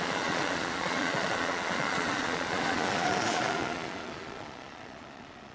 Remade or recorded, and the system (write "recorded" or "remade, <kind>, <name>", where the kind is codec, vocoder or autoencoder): remade, vocoder, Vocos